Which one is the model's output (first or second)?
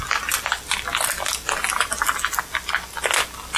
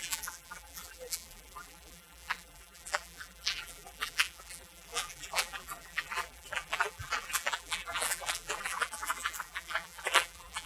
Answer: second